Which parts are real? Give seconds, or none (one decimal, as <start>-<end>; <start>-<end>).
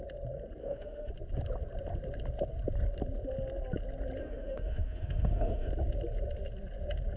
0.0-0.6; 1.1-4.2; 5.7-7.2